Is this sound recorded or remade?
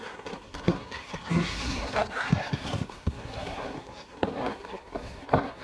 remade